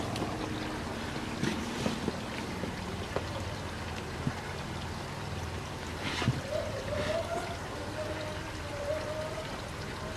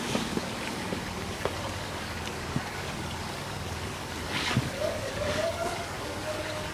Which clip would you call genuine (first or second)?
first